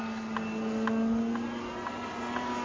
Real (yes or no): yes